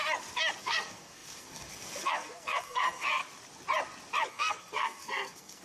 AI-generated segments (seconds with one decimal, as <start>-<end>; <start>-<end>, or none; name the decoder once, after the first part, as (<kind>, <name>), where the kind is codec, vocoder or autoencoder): 0.6-3.2 (codec, SNAC); 4.3-5.6